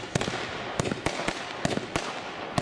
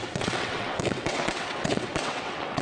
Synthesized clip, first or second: second